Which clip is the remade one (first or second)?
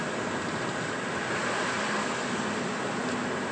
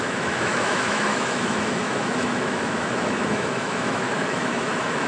second